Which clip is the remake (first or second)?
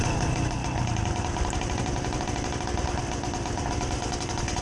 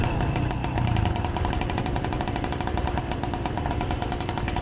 second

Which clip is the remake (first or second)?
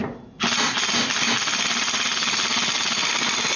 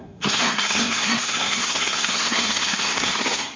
second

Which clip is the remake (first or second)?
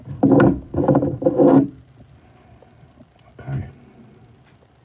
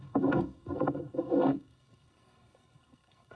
second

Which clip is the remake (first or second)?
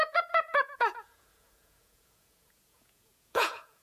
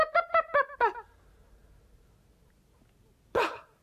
first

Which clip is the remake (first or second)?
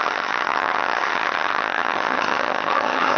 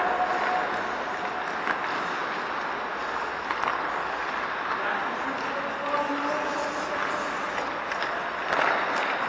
first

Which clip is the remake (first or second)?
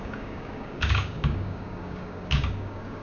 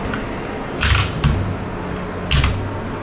first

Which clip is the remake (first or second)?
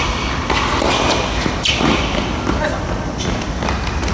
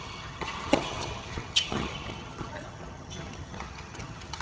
second